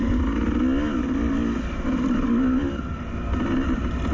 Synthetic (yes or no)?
no